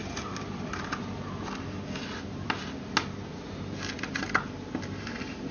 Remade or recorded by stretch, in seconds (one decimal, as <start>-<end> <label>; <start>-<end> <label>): 0.0-5.5 recorded